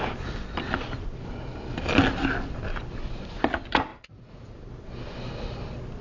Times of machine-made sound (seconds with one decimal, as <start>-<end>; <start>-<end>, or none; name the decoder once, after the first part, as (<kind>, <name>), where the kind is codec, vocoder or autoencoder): 3.9-4.7 (vocoder, Vocos)